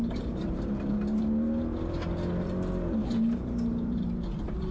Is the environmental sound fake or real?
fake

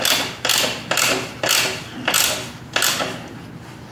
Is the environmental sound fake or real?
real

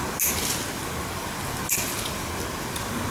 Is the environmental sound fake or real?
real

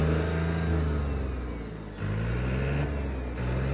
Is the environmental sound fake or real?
real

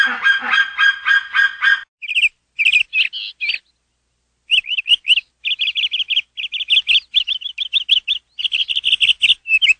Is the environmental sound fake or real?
real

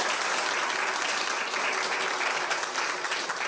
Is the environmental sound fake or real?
real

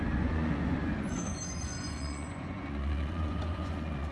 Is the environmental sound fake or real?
fake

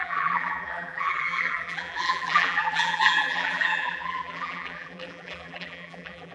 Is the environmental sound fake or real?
fake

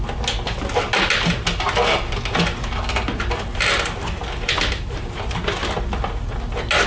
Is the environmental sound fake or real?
real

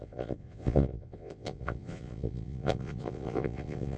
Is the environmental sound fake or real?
fake